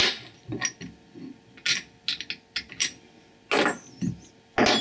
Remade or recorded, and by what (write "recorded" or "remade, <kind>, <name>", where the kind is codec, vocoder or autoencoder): recorded